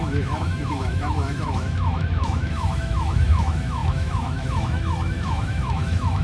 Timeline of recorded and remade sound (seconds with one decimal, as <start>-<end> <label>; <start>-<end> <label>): 0.0-6.2 remade